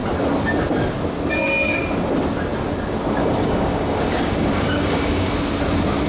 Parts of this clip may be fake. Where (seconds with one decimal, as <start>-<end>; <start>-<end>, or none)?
3.2-5.3